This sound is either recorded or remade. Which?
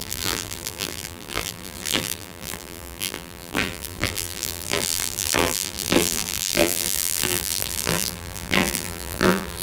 remade